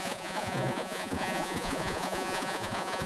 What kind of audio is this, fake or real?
fake